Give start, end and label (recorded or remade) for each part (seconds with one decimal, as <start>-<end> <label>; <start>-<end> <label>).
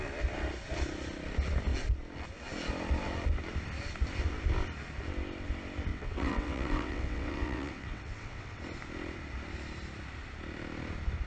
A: 0.0-5.9 recorded; 5.9-8.6 remade; 8.6-11.3 recorded